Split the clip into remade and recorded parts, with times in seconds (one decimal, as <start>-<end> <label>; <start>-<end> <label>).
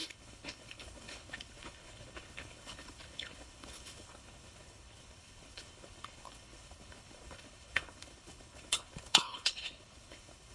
0.0-10.5 remade